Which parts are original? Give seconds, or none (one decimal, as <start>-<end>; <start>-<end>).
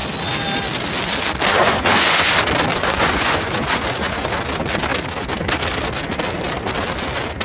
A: 0.0-1.6; 2.3-2.7; 4.3-7.4